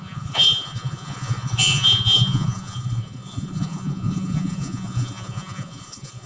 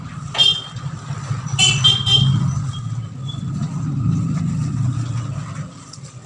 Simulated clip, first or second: first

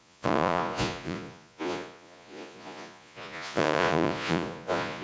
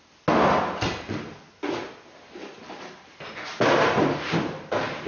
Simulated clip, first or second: first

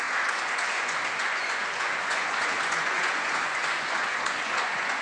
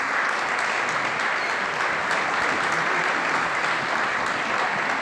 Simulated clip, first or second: first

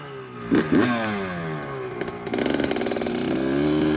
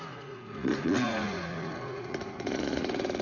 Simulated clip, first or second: second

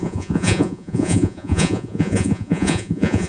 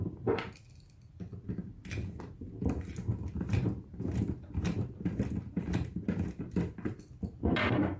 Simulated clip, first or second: first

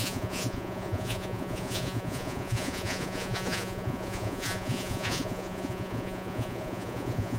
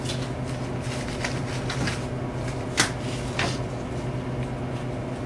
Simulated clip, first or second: first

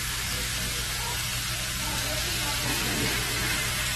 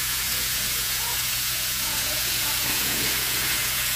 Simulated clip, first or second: second